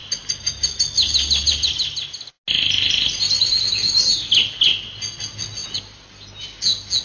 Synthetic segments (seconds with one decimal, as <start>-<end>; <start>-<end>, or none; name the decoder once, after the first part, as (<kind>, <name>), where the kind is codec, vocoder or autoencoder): none